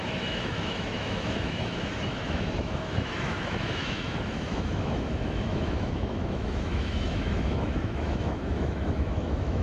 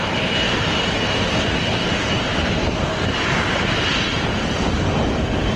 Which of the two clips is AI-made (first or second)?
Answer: first